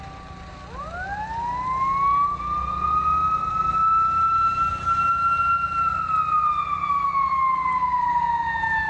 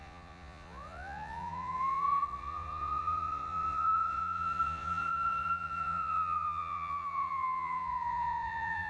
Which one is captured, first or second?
first